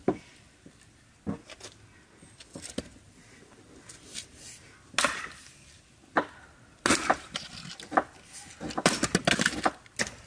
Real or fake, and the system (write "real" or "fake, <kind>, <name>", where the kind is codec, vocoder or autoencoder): real